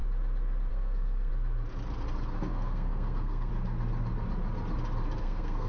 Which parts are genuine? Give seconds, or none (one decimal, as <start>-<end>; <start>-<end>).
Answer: 0.0-0.7; 1.3-2.5; 3.5-5.2